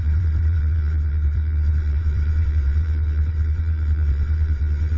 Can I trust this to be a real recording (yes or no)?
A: no